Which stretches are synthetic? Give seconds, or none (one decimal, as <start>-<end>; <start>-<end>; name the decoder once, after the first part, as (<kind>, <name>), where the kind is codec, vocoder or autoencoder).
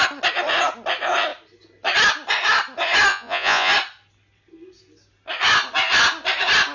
3.1-3.7 (vocoder, Vocos)